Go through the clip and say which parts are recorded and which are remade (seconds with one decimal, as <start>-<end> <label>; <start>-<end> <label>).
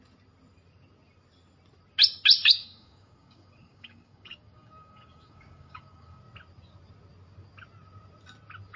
0.0-2.4 recorded; 2.4-6.2 remade; 6.2-8.8 recorded